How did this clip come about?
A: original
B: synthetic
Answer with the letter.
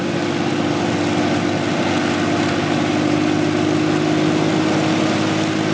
A